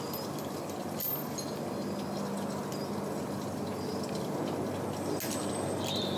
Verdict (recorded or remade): recorded